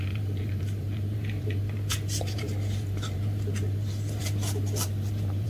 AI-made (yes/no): yes